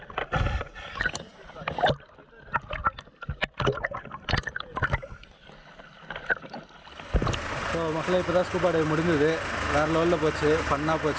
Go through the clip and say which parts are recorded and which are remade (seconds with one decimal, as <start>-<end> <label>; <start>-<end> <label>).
0.0-11.2 recorded